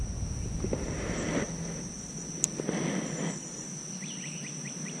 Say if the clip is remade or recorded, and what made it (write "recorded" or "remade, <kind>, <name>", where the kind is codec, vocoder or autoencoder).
recorded